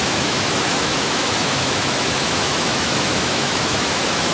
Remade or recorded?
remade